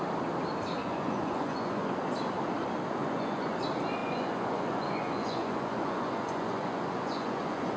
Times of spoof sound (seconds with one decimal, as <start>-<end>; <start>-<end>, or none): 0.8-1.9; 3.0-3.6; 4.0-7.8